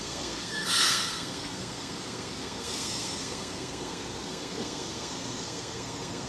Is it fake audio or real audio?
fake